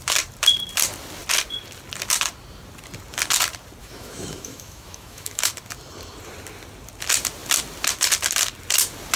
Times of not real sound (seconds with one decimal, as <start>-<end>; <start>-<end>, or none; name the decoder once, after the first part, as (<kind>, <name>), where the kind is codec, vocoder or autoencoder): 3.8-5.5 (autoencoder, DAC-VAE)